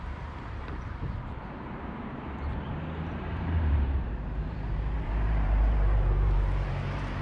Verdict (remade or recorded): remade